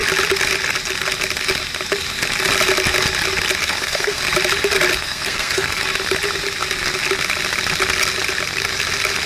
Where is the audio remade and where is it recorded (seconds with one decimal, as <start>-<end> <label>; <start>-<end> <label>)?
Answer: 0.0-3.6 recorded; 3.6-4.2 remade; 4.2-4.9 recorded; 4.9-5.8 remade; 5.8-9.3 recorded